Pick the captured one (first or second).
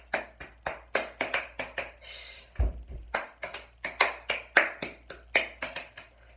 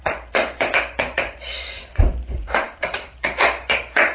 first